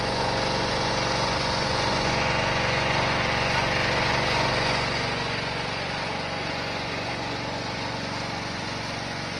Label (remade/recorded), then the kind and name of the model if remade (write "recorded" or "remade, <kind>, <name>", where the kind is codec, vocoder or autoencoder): remade, vocoder, Vocos